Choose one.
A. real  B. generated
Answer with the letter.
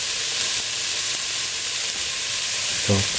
A